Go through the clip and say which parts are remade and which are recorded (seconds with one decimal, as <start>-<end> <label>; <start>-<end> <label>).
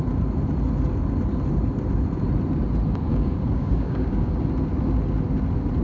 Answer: 0.0-3.1 recorded; 3.1-4.3 remade; 4.3-5.8 recorded